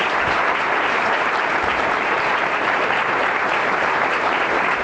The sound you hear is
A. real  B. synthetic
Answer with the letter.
B